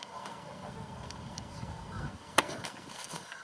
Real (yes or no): no